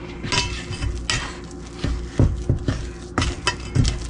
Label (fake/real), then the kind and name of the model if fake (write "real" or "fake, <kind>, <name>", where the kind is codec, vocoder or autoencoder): real